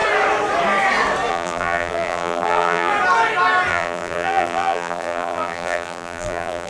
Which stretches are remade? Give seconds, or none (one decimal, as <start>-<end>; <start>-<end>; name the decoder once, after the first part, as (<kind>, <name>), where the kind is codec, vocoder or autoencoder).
1.3-2.9 (vocoder, BigVGAN v2); 3.7-6.7